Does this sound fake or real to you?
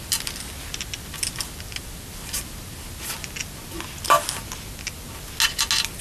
real